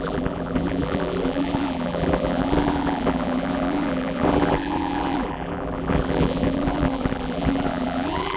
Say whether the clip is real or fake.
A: fake